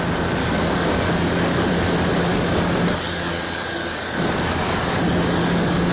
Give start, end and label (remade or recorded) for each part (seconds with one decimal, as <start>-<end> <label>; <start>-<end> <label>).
0.0-0.4 recorded; 0.4-1.6 remade; 1.6-2.3 recorded; 2.3-5.9 remade